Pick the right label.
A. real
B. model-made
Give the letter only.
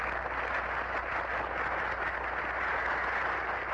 A